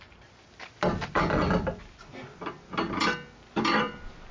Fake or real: real